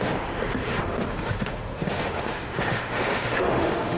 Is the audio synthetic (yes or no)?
yes